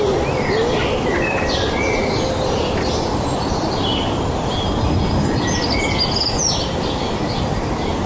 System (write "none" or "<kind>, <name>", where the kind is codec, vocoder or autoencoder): none